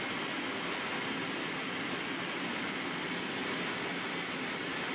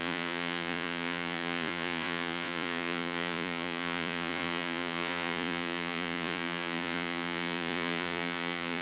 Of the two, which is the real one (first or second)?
first